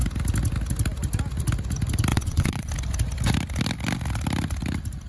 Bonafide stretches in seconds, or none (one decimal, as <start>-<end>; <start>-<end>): 0.0-2.1; 2.7-5.1